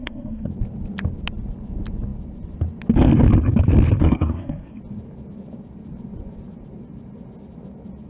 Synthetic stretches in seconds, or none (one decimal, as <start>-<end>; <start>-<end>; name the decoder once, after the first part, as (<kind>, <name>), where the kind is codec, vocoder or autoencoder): 0.0-0.5 (codec, SNAC); 4.0-4.8